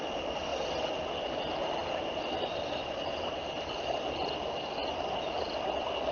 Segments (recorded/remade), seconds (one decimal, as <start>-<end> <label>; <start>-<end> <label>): 0.0-6.1 recorded